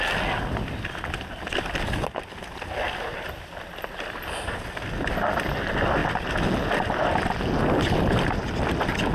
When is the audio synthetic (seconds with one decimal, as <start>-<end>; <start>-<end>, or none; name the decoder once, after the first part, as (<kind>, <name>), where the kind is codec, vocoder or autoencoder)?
none